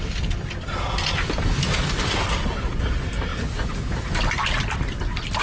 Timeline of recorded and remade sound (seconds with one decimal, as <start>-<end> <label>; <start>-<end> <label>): 0.0-5.4 recorded